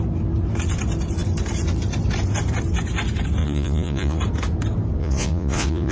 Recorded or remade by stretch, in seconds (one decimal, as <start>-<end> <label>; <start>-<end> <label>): 0.0-3.4 recorded; 3.4-4.2 remade; 4.2-5.0 recorded; 5.0-5.9 remade